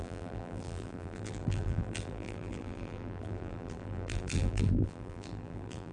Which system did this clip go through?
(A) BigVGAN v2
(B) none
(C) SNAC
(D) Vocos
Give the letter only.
A